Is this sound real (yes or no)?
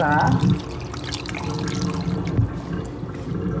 yes